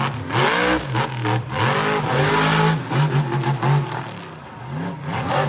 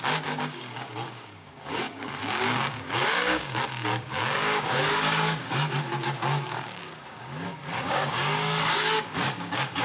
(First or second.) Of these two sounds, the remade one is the second